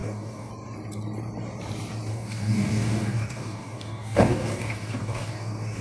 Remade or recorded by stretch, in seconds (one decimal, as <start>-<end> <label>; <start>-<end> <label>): 0.0-0.5 remade; 0.5-2.1 recorded; 2.1-5.8 remade